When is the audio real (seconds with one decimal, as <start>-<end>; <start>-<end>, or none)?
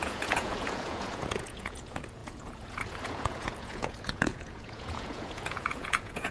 none